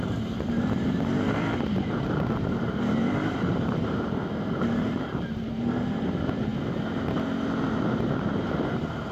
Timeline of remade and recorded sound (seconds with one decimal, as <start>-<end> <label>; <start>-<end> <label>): 0.0-6.5 remade; 6.5-7.8 recorded; 7.8-9.1 remade